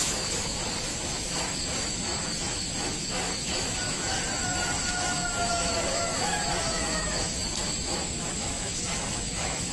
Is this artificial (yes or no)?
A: yes